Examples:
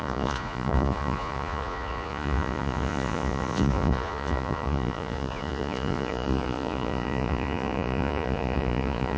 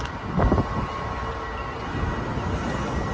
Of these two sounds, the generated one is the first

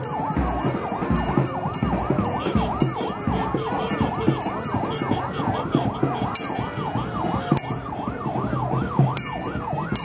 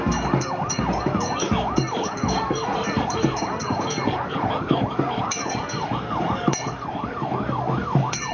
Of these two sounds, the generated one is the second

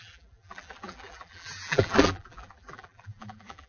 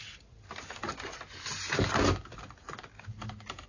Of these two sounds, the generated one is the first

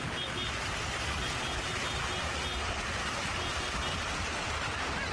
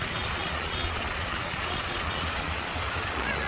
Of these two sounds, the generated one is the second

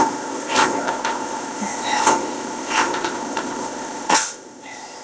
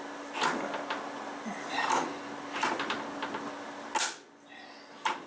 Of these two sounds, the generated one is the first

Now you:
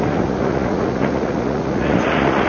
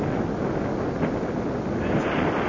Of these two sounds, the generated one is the first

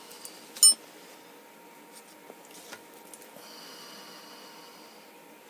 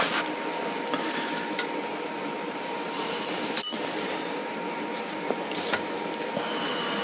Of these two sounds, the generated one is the second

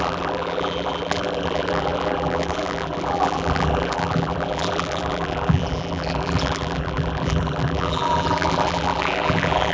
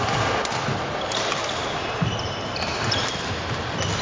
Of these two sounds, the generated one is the first